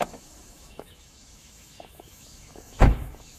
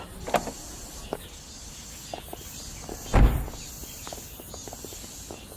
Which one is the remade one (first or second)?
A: first